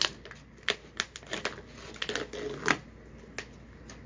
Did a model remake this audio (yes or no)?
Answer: no